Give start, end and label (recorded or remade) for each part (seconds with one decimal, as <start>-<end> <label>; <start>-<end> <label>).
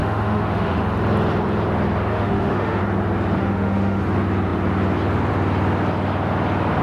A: 0.0-0.8 remade; 0.8-2.1 recorded; 2.1-2.8 remade; 2.8-3.4 recorded; 3.4-4.0 remade; 4.0-6.8 recorded